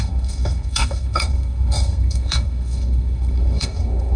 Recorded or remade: remade